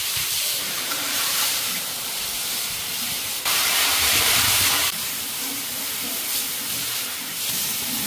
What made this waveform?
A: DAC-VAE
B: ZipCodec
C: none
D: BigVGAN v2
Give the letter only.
D